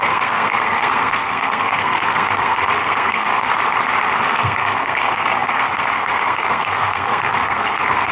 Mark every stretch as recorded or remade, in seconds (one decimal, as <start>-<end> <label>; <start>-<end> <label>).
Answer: 0.0-3.5 remade; 3.5-4.3 recorded; 4.3-8.1 remade